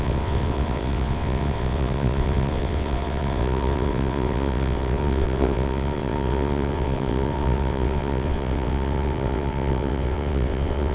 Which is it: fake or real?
fake